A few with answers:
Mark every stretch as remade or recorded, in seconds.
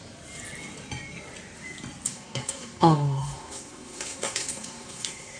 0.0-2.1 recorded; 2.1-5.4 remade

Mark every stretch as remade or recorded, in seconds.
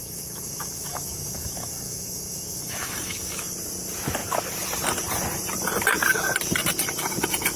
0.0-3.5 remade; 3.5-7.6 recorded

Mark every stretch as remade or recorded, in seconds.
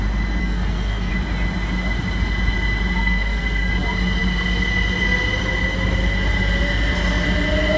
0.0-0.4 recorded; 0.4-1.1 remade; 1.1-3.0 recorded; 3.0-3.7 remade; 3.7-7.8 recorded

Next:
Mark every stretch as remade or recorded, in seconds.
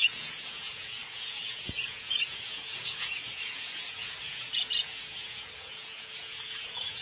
0.0-7.0 remade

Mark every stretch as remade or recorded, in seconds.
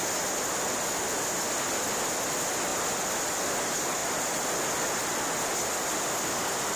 0.0-6.8 recorded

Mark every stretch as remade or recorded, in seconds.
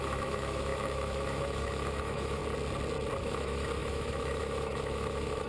0.0-2.4 remade; 2.4-3.2 recorded; 3.2-5.5 remade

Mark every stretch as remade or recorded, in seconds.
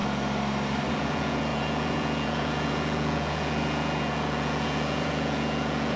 0.0-0.9 recorded; 0.9-6.0 remade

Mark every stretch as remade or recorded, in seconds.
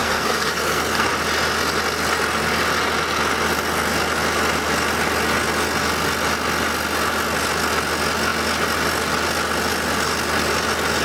0.0-1.1 remade; 1.1-11.0 recorded